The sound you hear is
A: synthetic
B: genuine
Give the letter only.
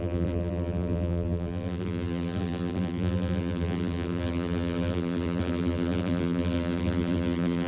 A